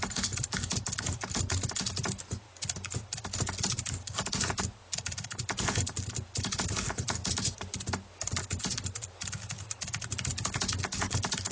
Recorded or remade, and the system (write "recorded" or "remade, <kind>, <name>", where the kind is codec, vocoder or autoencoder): recorded